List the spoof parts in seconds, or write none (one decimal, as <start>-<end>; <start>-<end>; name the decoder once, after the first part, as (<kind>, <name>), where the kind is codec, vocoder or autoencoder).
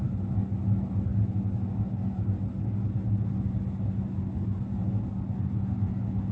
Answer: none